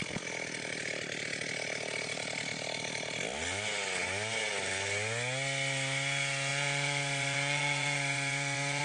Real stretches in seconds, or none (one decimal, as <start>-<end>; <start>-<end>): 0.0-6.5

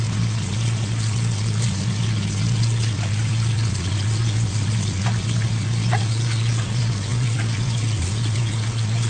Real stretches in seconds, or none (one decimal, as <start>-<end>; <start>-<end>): none

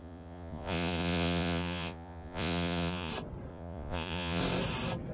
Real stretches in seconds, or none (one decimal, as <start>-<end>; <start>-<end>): 3.1-3.5; 4.4-5.1

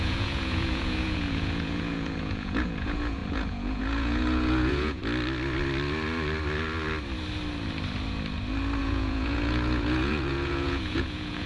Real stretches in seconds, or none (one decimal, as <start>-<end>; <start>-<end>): 5.0-8.8

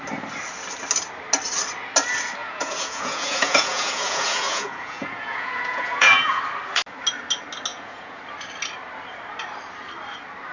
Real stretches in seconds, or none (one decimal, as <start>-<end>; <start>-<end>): 0.0-2.4; 6.4-7.7; 8.2-10.5

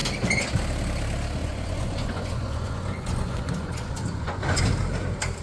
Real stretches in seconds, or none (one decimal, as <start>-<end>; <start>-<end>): 0.0-1.4; 4.6-5.4

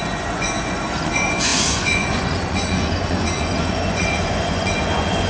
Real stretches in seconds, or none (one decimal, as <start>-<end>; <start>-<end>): none